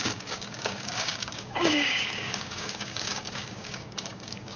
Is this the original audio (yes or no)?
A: no